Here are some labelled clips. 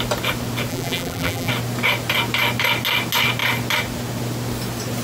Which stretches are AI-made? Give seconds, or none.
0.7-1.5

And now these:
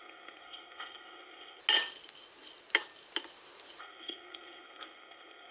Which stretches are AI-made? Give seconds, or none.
0.0-1.6; 3.8-5.5

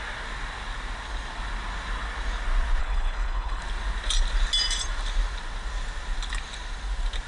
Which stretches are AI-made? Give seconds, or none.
2.8-3.6

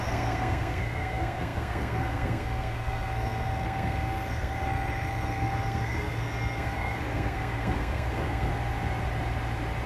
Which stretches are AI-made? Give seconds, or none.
0.0-8.5

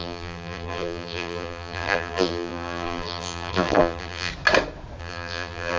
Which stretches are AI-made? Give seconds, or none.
0.0-4.3; 5.0-5.8

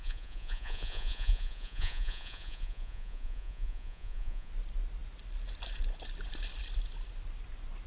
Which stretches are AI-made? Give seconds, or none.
0.0-4.5

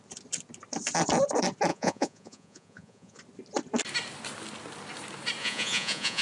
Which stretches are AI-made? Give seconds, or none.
1.7-3.2; 5.4-6.2